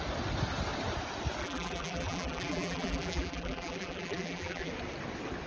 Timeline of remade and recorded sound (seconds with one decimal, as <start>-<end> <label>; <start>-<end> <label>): 0.0-1.4 recorded; 1.4-4.7 remade; 4.7-5.5 recorded